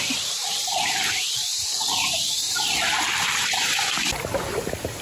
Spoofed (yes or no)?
yes